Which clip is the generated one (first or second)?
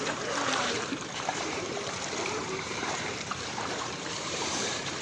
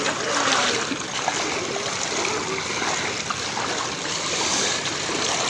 first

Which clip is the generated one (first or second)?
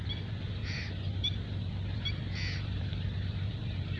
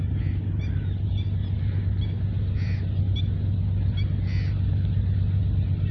first